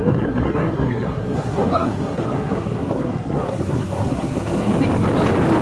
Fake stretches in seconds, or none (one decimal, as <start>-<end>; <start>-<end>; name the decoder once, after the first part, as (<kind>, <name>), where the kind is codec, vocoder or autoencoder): 0.0-4.7 (codec, SNAC)